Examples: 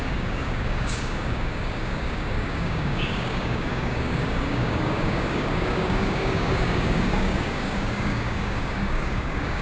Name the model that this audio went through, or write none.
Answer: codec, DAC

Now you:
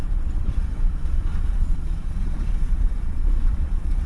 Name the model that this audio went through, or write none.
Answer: vocoder, Vocos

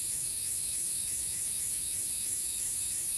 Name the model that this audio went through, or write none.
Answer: autoencoder, DAC-VAE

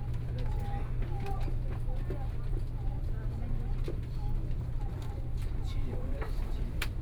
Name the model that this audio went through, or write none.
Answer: vocoder, BigVGAN v2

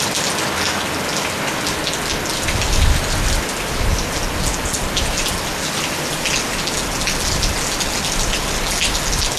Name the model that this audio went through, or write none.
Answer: none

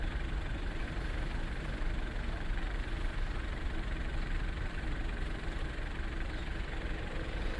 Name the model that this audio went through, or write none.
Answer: vocoder, BigVGAN v2